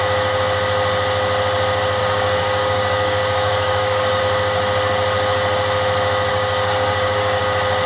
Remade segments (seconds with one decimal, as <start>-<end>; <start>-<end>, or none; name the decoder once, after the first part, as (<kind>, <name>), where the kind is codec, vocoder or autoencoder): 2.0-4.2 (codec, DAC); 6.3-7.4